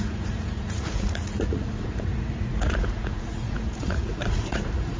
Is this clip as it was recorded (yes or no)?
no